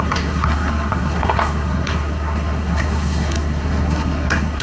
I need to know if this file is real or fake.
fake